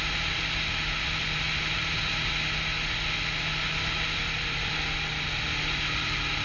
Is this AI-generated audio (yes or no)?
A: no